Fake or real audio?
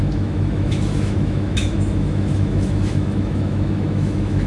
fake